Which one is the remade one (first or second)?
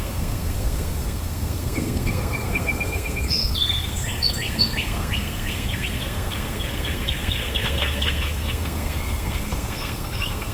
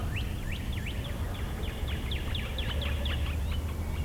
first